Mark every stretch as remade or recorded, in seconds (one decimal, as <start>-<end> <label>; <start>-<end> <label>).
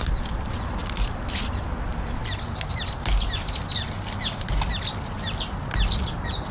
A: 0.0-6.5 recorded